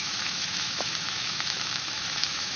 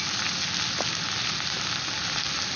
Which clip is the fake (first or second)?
first